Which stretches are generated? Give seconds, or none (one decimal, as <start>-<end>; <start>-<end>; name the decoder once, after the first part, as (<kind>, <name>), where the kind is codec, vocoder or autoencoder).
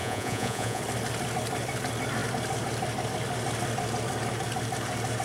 0.0-0.8 (vocoder, Vocos)